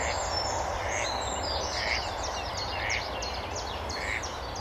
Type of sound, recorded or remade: recorded